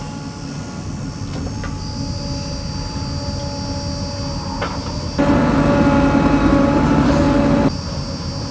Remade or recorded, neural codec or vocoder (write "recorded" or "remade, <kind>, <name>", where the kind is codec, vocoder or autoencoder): recorded